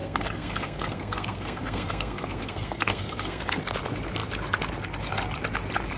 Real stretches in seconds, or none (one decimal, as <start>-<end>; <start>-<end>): 3.6-6.0